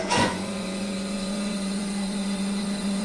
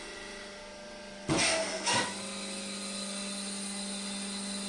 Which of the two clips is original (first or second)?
second